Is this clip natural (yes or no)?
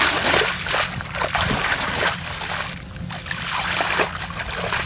yes